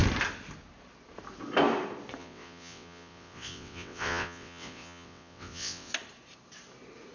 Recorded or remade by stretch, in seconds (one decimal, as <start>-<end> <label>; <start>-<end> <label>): 0.0-2.2 recorded; 2.2-5.9 remade; 5.9-7.1 recorded